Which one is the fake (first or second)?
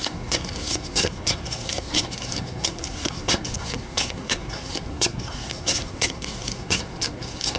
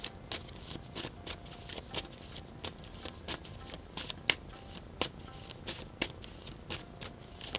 first